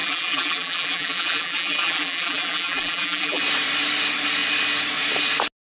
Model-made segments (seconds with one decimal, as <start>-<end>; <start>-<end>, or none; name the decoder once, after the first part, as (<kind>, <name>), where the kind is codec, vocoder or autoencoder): 0.0-3.4 (vocoder, BigVGAN v2)